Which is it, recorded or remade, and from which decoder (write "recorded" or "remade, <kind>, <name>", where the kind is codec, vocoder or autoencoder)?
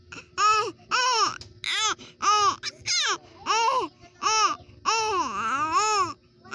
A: recorded